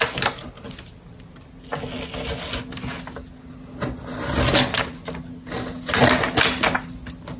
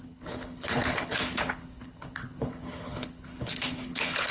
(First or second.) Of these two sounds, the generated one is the second